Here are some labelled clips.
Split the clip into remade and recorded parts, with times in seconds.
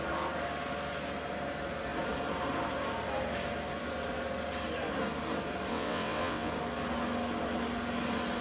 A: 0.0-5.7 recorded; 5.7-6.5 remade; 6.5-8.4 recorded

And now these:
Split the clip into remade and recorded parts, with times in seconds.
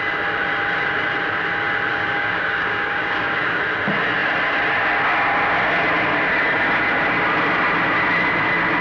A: 0.0-1.9 recorded; 1.9-3.6 remade; 3.6-8.8 recorded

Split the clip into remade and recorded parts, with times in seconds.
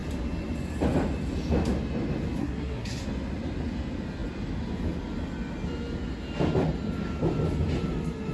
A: 0.0-2.4 recorded; 2.4-3.0 remade; 3.0-8.3 recorded